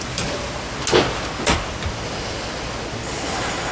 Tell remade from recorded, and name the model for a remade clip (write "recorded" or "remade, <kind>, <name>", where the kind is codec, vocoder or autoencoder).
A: recorded